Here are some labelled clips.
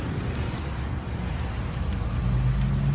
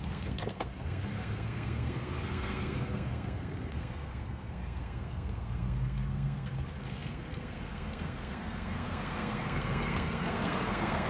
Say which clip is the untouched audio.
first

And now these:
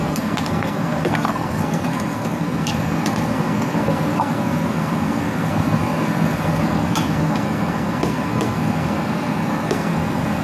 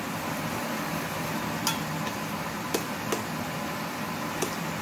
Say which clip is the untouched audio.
second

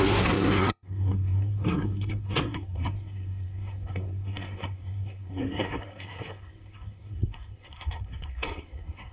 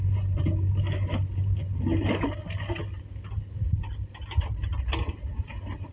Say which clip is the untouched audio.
second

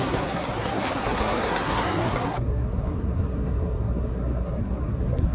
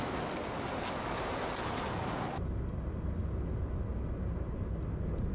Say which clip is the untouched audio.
second